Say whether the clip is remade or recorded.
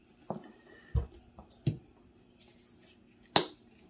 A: recorded